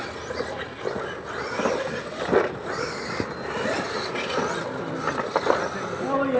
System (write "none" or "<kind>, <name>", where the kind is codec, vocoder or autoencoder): none